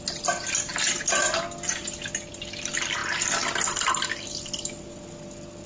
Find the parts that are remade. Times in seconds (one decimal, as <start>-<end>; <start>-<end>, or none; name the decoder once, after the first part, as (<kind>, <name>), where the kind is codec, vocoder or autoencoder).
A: none